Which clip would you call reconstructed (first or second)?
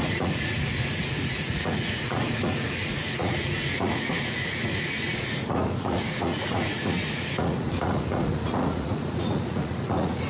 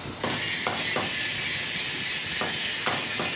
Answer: first